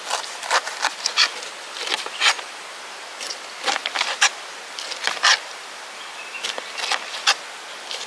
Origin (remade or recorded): remade